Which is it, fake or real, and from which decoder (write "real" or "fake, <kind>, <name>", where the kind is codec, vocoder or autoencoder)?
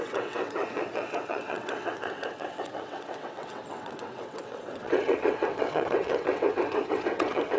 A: fake, vocoder, WaveNeXt